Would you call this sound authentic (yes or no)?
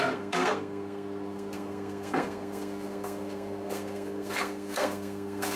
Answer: no